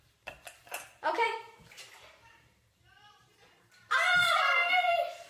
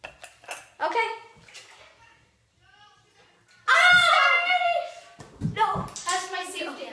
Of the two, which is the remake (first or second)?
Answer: first